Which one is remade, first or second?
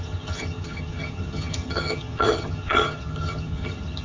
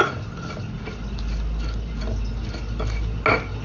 first